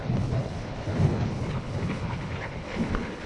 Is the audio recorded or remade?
remade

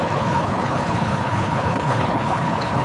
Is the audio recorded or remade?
remade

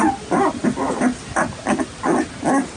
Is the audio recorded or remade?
recorded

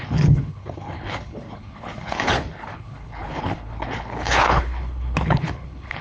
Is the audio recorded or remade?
remade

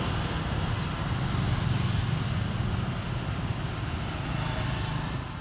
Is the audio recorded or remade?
recorded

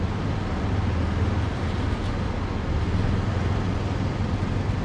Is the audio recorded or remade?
recorded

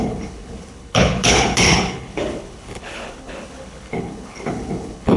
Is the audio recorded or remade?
remade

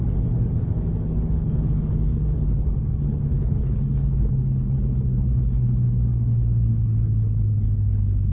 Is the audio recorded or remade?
remade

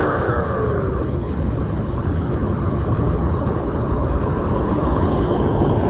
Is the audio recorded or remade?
remade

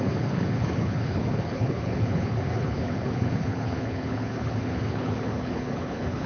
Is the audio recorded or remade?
remade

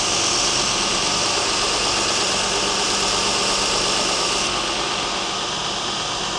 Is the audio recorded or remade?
recorded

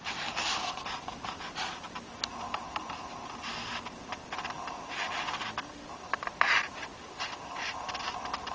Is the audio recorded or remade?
recorded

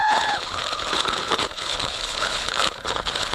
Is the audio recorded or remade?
remade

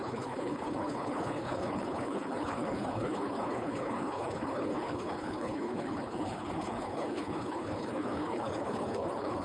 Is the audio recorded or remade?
remade